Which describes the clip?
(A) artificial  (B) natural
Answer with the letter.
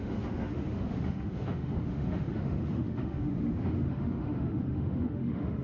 A